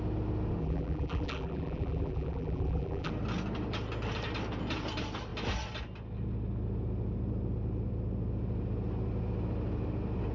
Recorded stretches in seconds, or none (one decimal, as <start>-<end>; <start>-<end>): 0.0-0.6; 3.1-10.3